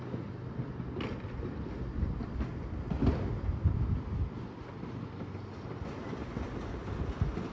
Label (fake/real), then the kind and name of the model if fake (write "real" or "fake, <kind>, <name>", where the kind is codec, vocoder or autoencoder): real